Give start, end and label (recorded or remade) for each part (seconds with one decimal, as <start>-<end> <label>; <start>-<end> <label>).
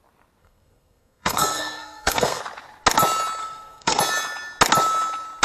0.0-0.4 recorded; 0.4-2.4 remade; 2.4-3.4 recorded; 3.4-4.0 remade; 4.0-5.4 recorded